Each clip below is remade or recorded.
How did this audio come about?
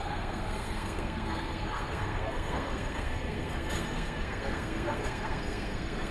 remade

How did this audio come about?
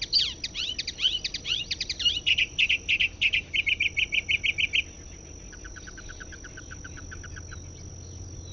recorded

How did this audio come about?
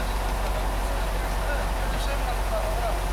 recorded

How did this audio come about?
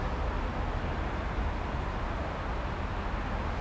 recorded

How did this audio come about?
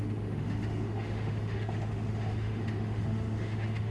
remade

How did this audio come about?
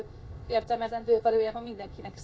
remade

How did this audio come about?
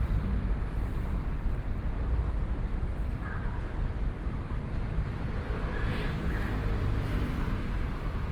remade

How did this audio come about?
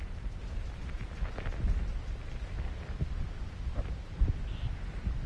recorded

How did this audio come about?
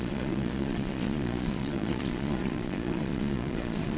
remade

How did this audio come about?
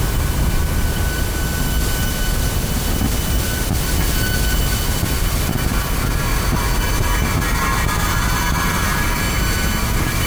recorded